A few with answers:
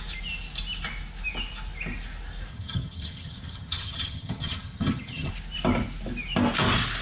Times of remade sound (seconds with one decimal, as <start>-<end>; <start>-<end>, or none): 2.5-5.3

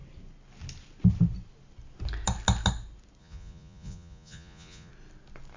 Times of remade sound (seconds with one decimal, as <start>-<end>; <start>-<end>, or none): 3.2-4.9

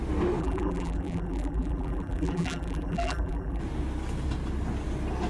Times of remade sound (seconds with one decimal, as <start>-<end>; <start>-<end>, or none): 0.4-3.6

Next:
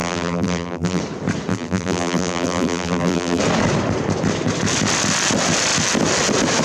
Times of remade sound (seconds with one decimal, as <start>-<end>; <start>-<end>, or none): 0.0-1.0; 1.5-3.4

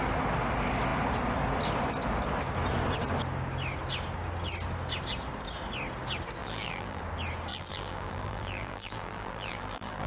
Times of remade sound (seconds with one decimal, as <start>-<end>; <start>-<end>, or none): 6.4-7.0; 7.5-10.1

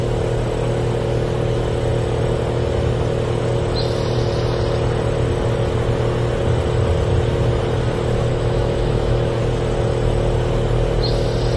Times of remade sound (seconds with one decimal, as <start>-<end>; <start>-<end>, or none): 8.3-9.4

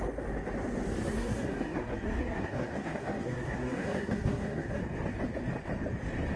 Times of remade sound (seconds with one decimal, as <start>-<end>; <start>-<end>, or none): 1.0-4.8

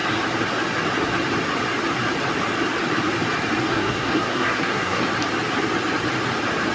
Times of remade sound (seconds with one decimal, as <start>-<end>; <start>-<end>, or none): 3.7-5.0